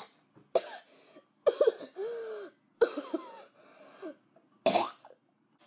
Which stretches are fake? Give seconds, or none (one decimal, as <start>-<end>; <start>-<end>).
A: none